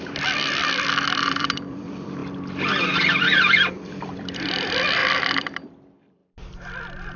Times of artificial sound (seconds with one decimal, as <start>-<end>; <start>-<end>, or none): 0.0-2.2; 3.0-6.2; 6.8-7.2